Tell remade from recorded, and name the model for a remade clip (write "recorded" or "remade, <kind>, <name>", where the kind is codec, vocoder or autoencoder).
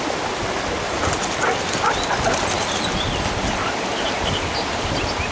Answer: recorded